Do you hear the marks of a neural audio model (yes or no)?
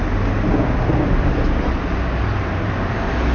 no